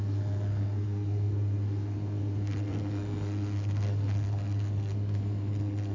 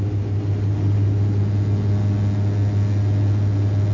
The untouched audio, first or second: second